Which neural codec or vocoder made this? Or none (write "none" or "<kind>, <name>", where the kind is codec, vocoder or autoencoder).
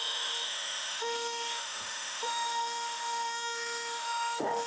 autoencoder, DAC-VAE